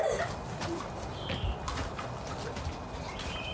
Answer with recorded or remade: recorded